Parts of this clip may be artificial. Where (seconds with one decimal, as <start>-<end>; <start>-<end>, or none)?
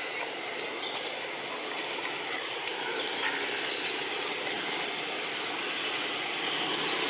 none